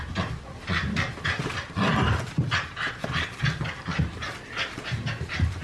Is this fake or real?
real